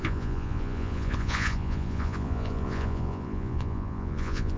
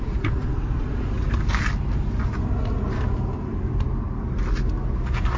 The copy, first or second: first